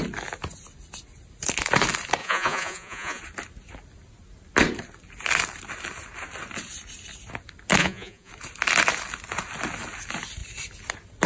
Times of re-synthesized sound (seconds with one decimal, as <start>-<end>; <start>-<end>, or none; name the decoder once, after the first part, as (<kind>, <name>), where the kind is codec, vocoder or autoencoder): 2.2-3.2 (vocoder, Vocos); 7.8-8.3